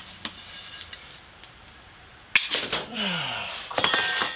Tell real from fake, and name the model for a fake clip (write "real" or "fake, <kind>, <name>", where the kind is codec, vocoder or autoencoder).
real